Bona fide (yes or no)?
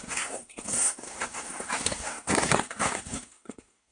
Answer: no